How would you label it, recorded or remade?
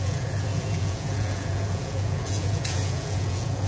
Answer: remade